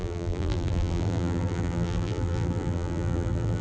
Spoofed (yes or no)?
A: yes